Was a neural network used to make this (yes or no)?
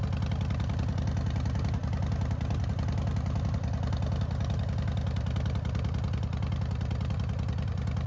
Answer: no